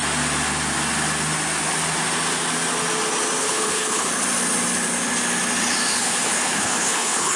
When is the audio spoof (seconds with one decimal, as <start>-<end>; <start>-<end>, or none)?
3.4-4.1; 6.0-7.4